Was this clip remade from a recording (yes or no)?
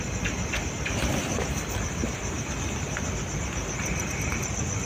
no